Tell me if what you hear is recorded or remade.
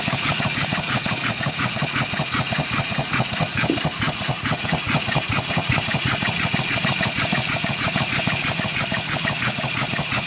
remade